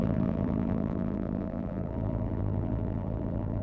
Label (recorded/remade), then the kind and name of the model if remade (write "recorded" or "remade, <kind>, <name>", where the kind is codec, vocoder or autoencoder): remade, vocoder, BigVGAN v2